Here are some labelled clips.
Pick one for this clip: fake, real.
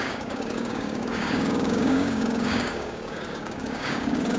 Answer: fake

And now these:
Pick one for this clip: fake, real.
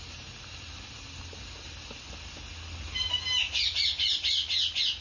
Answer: real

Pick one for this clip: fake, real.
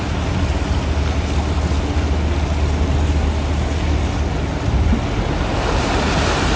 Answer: real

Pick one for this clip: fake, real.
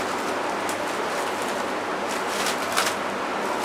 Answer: real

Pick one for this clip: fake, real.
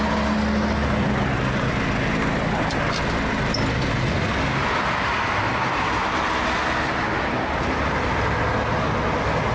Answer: real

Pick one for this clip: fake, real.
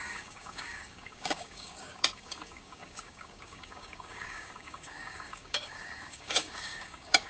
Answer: fake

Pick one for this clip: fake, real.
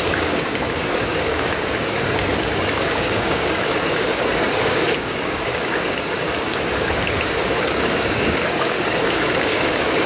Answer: fake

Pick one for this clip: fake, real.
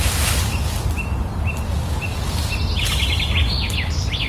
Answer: real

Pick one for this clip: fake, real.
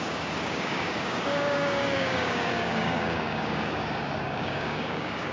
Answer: fake